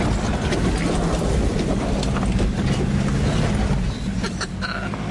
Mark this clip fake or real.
real